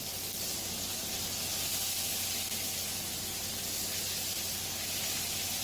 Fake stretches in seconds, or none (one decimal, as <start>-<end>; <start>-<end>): none